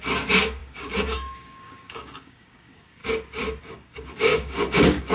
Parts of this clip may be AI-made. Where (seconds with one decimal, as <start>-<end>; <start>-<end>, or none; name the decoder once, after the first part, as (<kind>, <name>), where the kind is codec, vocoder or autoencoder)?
0.0-3.0 (codec, DAC); 3.6-5.1